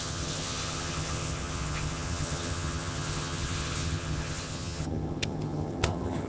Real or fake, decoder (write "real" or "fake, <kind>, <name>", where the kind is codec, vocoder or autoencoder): fake, vocoder, HiFi-GAN